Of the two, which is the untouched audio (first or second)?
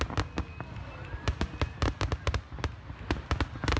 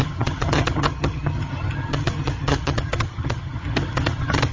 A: first